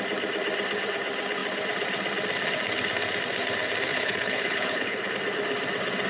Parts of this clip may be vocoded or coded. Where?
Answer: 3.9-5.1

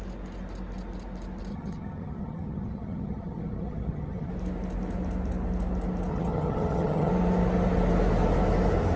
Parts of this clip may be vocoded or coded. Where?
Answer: 1.5-4.3; 6.1-7.1

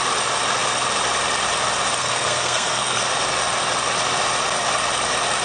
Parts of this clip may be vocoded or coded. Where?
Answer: 2.0-3.0